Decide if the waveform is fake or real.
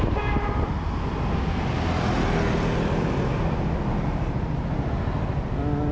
real